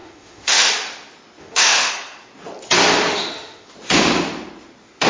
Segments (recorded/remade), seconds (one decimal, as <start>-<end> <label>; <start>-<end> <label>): 0.0-0.7 remade; 0.7-1.4 recorded; 1.4-1.9 remade; 1.9-3.1 recorded; 3.1-3.7 remade; 3.7-5.1 recorded